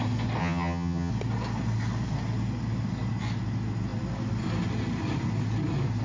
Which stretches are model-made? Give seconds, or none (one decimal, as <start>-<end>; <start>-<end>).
0.4-1.1